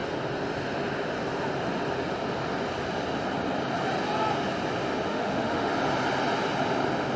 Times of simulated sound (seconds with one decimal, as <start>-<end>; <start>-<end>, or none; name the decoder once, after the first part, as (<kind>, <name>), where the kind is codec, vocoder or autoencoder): 5.1-5.7 (autoencoder, DAC-VAE)